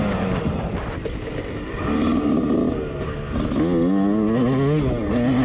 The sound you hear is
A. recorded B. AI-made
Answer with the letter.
A